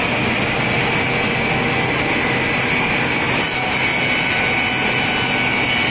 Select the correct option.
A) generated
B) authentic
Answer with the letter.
B